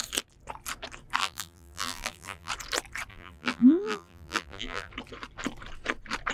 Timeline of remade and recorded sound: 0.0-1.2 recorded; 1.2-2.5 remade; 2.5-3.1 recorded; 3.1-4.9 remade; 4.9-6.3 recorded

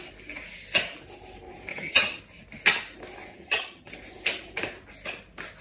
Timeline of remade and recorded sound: 0.0-1.7 recorded; 1.7-2.2 remade; 2.2-3.3 recorded; 3.3-3.9 remade; 3.9-5.6 recorded

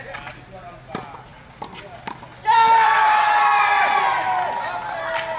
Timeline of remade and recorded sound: 0.0-5.4 recorded

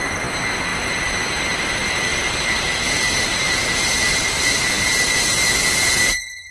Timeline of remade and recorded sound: 0.0-6.5 recorded

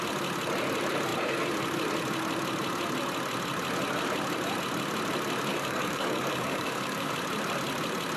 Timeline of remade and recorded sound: 0.0-5.5 recorded; 5.5-7.1 remade; 7.1-8.2 recorded